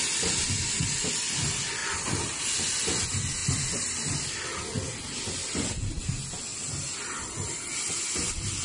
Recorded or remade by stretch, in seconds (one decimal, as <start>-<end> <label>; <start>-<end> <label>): 0.0-1.8 recorded; 1.8-2.4 remade; 2.4-6.5 recorded; 6.5-7.9 remade; 7.9-8.6 recorded